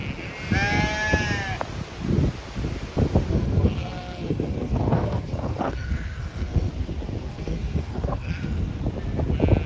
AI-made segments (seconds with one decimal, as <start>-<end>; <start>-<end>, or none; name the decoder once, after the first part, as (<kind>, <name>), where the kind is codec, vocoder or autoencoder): 3.3-6.7 (codec, SNAC); 7.2-8.7